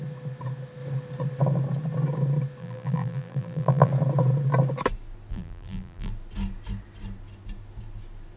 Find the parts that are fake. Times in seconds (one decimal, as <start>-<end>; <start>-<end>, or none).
2.6-3.9; 5.3-6.1